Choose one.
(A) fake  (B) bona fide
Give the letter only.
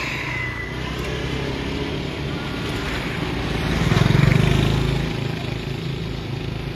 B